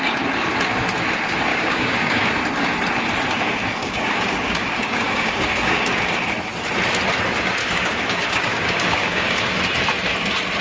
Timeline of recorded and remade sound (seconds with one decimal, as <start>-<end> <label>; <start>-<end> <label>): 0.0-1.5 recorded; 1.5-2.3 remade; 2.3-3.8 recorded; 3.8-5.9 remade; 5.9-7.6 recorded; 7.6-9.6 remade; 9.6-10.6 recorded